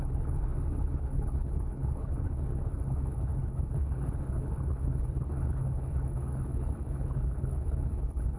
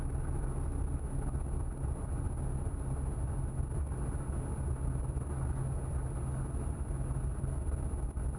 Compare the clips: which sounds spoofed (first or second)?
first